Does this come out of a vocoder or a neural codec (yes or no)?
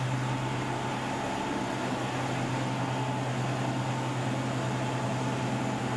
no